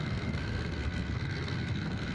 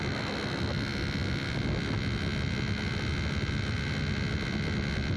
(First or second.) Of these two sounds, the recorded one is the second